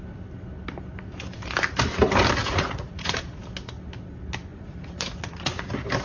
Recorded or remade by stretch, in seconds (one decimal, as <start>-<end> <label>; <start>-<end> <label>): 0.0-2.4 recorded; 2.4-3.4 remade; 3.4-4.5 recorded; 4.5-5.6 remade; 5.6-6.0 recorded